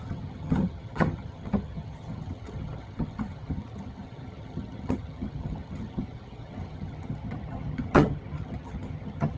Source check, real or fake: fake